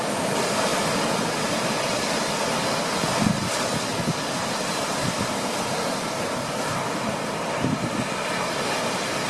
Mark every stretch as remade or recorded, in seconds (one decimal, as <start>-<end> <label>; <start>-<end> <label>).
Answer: 0.0-9.3 recorded